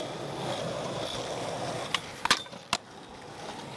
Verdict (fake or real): real